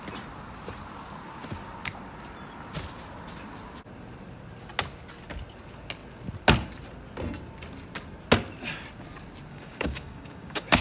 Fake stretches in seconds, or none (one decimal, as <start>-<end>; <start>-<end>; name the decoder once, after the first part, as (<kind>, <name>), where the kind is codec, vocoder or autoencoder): 9.5-10.8 (codec, DAC)